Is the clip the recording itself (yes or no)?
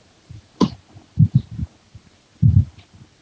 yes